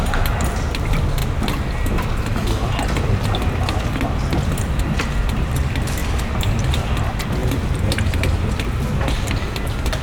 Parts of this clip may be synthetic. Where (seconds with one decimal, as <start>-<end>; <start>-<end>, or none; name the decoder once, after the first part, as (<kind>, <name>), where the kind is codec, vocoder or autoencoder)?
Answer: none